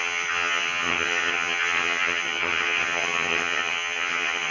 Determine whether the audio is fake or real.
fake